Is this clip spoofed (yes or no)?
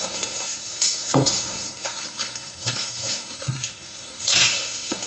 yes